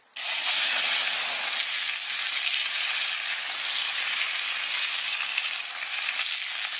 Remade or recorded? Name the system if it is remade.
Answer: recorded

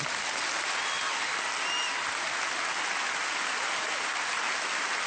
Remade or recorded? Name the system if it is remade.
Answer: recorded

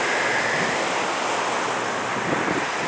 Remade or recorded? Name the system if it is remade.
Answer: recorded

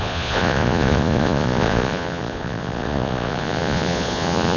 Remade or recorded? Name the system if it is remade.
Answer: remade, vocoder, Vocos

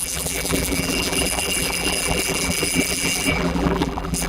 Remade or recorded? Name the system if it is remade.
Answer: remade, vocoder, BigVGAN v2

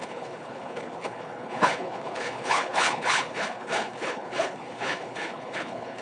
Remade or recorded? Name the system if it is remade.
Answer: remade, codec, HILCodec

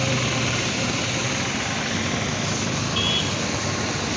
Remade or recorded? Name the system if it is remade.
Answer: recorded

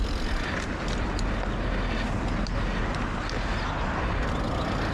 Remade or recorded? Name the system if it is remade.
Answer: recorded